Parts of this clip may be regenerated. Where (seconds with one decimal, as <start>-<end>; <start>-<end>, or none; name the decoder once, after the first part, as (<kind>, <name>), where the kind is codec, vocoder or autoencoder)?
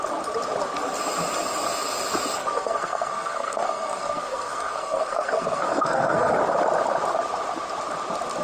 2.4-6.3 (codec, SNAC)